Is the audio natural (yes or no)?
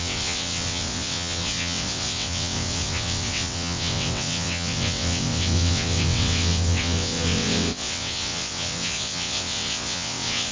no